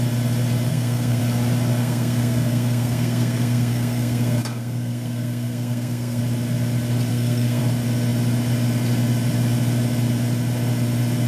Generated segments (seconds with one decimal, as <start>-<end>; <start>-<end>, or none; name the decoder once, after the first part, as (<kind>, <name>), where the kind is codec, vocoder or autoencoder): 0.7-1.2 (codec, SNAC); 1.8-6.2; 7.1-7.6